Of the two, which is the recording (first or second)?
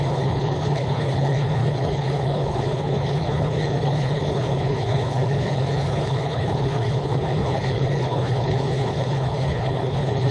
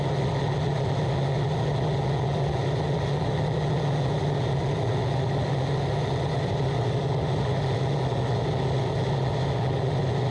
second